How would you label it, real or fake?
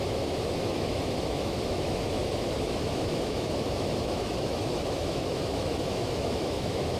fake